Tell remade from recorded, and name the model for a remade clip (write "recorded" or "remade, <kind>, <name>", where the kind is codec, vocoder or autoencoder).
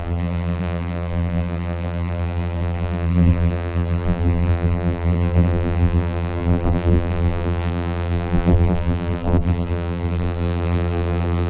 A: remade, vocoder, BigVGAN v2